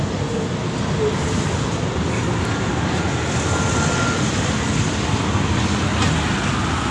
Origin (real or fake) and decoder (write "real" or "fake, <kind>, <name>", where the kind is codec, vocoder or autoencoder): real